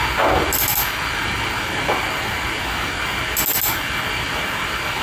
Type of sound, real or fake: real